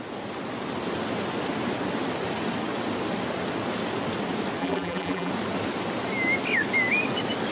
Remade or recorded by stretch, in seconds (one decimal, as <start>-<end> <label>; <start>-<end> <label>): 0.0-4.6 recorded; 4.6-5.3 remade; 5.3-7.5 recorded